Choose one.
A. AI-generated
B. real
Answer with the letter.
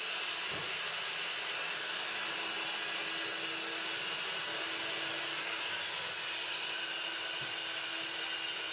B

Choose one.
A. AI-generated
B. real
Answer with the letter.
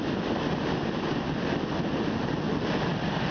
B